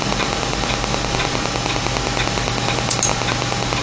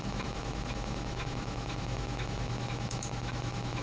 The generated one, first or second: second